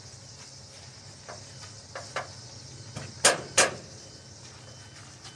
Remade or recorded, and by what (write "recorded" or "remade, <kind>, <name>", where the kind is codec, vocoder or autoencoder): recorded